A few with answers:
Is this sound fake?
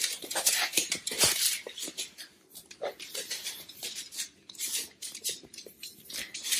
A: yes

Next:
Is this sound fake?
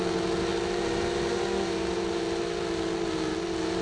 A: no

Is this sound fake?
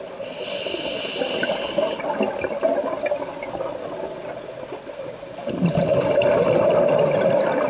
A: no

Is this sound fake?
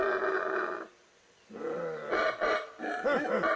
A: no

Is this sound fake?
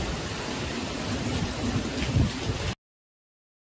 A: no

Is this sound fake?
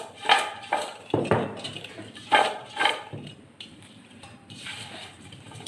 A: yes